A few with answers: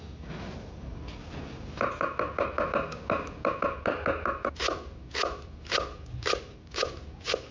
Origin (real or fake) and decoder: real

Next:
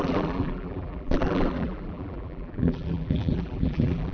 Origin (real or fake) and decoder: fake, vocoder, BigVGAN v2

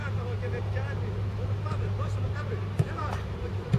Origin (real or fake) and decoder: real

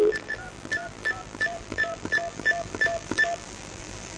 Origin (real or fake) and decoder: fake, vocoder, BigVGAN v2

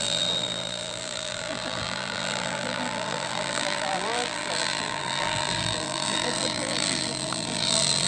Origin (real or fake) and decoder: fake, vocoder, BigVGAN v2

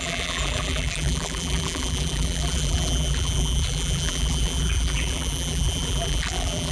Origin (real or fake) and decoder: fake, vocoder, BigVGAN v2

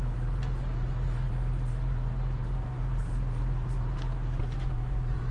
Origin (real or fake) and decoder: fake, vocoder, BigVGAN v2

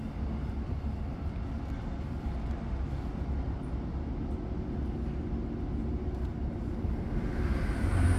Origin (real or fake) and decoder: real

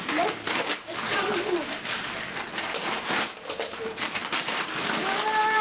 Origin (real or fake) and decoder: fake, vocoder, BigVGAN v2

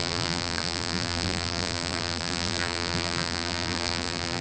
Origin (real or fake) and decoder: fake, vocoder, BigVGAN v2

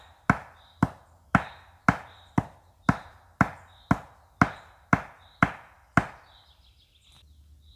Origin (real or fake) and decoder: real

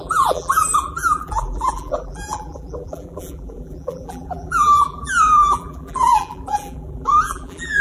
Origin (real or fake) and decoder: fake, vocoder, BigVGAN v2